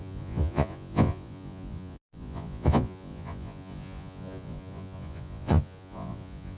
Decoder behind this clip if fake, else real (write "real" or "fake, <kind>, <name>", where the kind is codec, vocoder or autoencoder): fake, vocoder, Vocos